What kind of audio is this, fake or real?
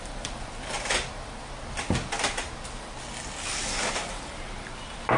real